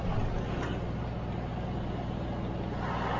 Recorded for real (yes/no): yes